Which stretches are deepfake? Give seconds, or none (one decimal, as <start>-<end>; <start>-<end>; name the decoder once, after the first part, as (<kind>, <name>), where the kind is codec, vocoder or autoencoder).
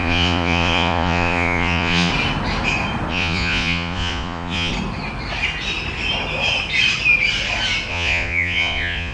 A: 0.0-2.1 (vocoder, Vocos); 3.1-4.7; 7.9-9.1